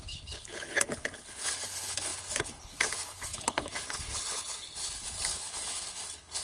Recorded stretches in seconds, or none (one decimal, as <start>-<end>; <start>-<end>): none